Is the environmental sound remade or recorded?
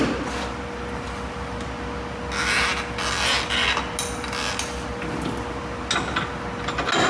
recorded